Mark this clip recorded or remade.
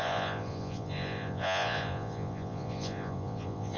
remade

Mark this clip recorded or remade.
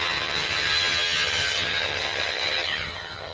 remade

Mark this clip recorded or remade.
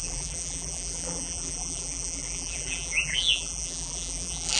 remade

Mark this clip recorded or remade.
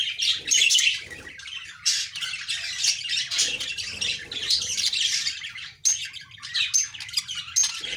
recorded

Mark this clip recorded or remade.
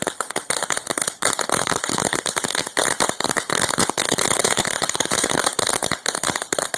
remade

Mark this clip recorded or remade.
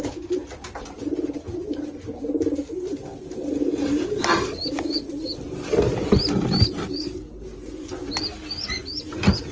recorded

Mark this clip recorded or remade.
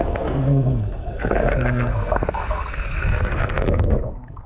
remade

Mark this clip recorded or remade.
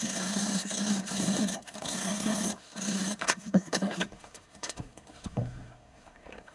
remade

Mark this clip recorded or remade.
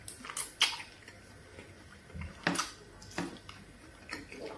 recorded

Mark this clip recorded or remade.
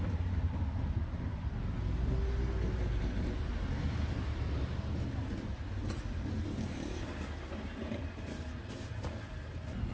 recorded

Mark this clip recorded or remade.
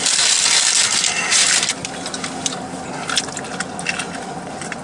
recorded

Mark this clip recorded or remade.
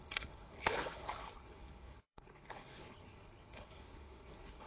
remade